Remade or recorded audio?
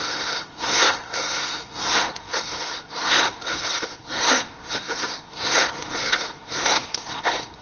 remade